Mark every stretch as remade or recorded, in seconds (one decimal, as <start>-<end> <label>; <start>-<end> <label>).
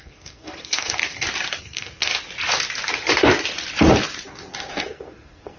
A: 0.0-1.0 remade; 1.0-1.6 recorded; 1.6-2.1 remade; 2.1-4.7 recorded; 4.7-5.6 remade